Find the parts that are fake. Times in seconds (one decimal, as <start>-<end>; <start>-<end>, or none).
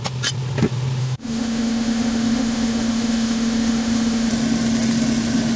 1.0-4.3